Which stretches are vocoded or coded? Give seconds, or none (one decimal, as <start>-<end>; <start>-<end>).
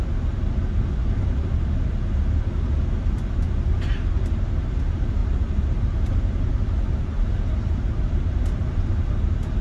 5.2-9.2